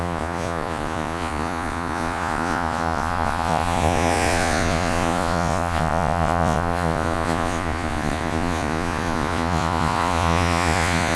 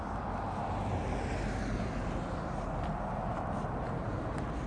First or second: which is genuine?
second